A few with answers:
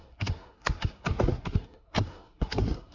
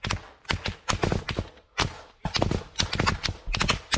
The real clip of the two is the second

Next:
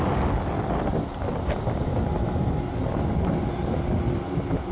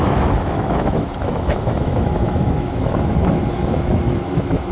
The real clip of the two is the first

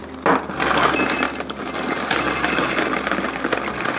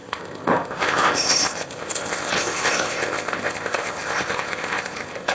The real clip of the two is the first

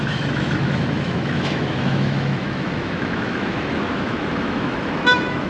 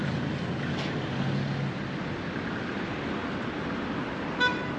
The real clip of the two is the second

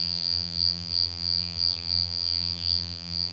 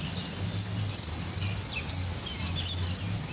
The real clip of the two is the second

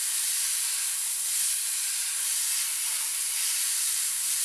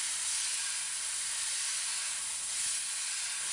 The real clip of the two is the second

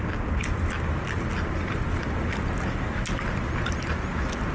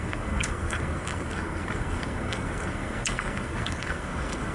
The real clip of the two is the first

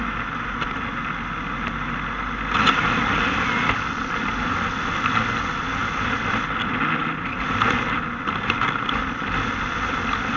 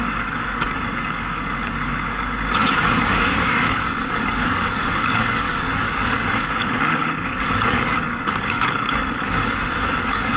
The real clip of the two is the first